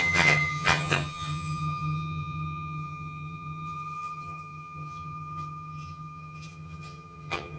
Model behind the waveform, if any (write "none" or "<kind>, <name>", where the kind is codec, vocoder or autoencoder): vocoder, HiFi-GAN